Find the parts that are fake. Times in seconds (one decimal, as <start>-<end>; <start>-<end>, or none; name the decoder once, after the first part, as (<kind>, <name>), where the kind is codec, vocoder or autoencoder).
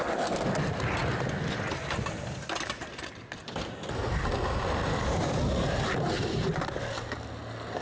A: none